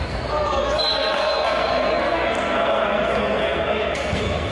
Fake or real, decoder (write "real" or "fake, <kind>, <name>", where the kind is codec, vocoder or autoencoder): fake, codec, SNAC